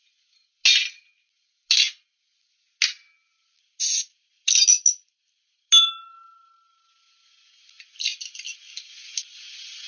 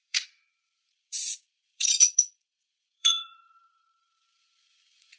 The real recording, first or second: first